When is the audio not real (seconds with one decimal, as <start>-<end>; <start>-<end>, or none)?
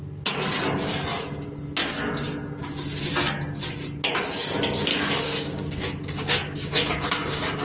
4.9-7.6